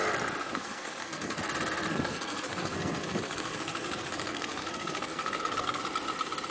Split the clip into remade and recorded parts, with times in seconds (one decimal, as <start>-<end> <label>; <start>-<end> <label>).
0.0-0.4 recorded; 0.4-1.4 remade; 1.4-1.9 recorded; 1.9-5.8 remade; 5.8-6.5 recorded